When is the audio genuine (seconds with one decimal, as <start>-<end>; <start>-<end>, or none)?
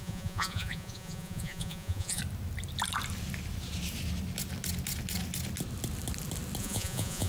2.2-6.6